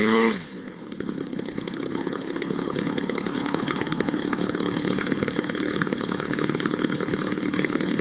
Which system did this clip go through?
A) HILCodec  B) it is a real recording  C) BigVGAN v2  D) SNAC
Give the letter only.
A